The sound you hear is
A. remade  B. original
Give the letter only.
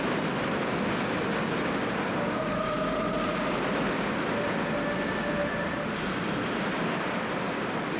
B